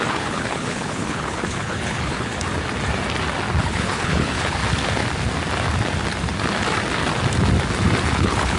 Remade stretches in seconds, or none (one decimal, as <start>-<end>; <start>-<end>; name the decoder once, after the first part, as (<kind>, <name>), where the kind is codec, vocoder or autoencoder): 0.0-2.3 (codec, HILCodec); 3.6-4.6; 8.0-8.6

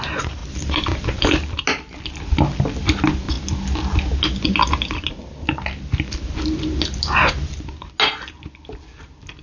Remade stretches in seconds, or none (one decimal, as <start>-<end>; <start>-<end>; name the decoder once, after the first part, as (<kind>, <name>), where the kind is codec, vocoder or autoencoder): none

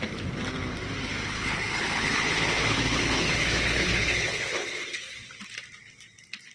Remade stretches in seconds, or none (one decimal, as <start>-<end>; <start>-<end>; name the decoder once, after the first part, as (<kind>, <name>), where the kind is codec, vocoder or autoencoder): 1.2-5.1 (codec, HILCodec)